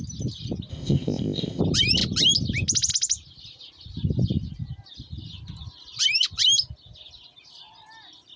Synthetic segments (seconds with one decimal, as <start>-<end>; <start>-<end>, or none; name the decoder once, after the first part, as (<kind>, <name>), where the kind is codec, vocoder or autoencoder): 0.7-1.6 (codec, ZipCodec)

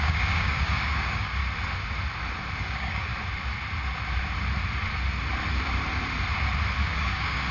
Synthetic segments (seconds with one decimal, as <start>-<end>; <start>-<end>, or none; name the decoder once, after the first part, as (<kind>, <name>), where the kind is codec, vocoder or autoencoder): 0.0-1.4 (codec, DAC); 2.6-3.1; 6.8-7.5